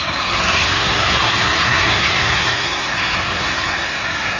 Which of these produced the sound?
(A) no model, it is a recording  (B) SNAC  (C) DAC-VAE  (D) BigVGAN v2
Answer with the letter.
B